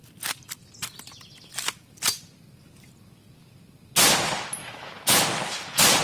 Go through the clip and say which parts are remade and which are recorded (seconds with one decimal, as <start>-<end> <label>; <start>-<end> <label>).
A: 0.0-4.6 recorded; 4.6-5.2 remade; 5.2-6.0 recorded